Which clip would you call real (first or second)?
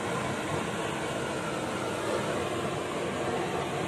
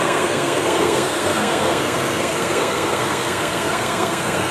first